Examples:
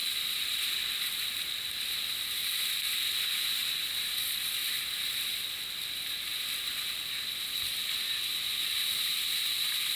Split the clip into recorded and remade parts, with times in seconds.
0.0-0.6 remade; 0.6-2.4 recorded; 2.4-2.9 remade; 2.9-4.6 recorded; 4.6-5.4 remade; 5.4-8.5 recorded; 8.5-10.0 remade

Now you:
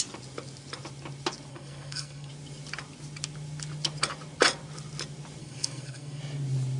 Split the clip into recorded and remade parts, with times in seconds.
0.0-1.5 recorded; 1.5-2.3 remade; 2.3-5.4 recorded; 5.4-6.2 remade; 6.2-6.8 recorded

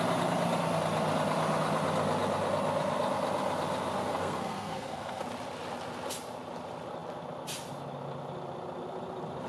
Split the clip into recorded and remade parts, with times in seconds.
0.0-4.1 recorded; 4.1-5.2 remade; 5.2-9.5 recorded

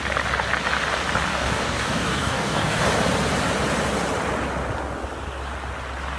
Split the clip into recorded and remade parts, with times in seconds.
0.0-1.3 recorded; 1.3-2.8 remade; 2.8-6.2 recorded